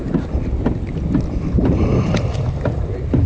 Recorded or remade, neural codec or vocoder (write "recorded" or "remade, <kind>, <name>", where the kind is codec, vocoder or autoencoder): recorded